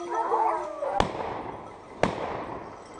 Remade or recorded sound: recorded